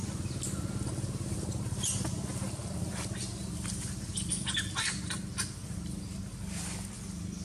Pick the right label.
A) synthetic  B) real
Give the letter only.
B